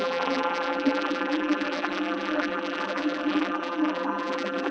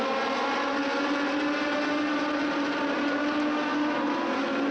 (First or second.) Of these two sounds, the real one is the second